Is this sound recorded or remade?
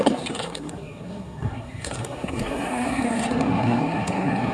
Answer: remade